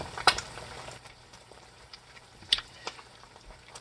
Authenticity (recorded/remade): remade